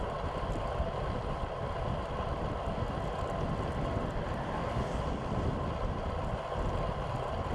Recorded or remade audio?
recorded